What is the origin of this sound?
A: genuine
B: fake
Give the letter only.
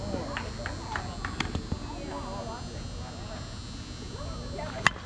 A